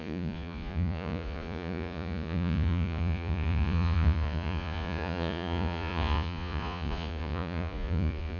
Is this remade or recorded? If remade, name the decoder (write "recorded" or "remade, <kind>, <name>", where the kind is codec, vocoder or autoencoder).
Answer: remade, vocoder, Vocos